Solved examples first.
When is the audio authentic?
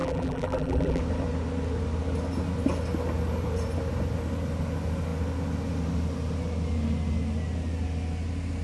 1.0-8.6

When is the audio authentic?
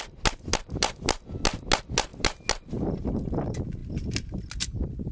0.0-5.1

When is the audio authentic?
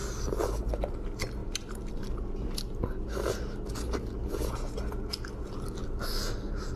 0.0-1.4; 2.2-5.8